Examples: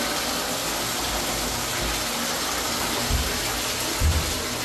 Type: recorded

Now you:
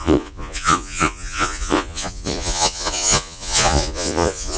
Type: remade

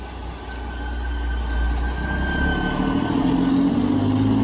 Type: recorded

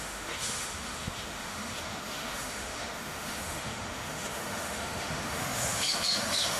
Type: remade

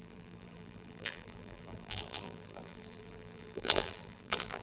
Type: remade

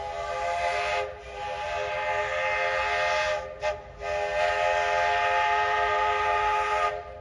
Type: recorded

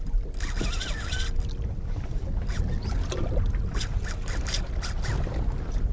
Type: recorded